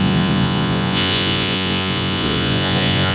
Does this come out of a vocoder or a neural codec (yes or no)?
yes